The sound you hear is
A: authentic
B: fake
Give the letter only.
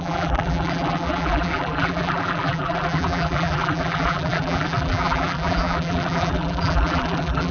B